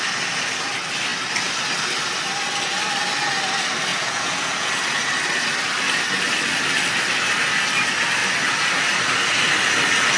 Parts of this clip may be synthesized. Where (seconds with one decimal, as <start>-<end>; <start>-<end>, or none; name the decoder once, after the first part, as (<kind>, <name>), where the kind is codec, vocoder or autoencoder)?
3.9-4.7 (vocoder, Vocos)